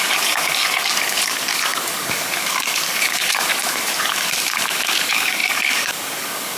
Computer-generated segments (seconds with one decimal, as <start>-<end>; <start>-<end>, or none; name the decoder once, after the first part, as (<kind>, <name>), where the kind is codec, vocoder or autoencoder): 0.0-6.6 (codec, DAC)